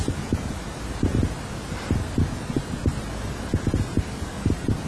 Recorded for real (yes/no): yes